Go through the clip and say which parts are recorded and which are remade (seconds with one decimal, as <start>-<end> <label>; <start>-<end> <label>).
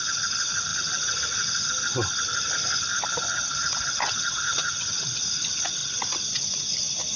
0.0-3.3 recorded; 3.3-4.7 remade; 4.7-5.8 recorded; 5.8-6.7 remade; 6.7-7.2 recorded